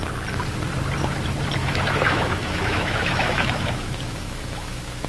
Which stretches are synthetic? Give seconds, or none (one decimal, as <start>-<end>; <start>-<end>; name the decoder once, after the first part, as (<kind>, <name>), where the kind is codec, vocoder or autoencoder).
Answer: 1.6-5.1 (autoencoder, DAC-VAE)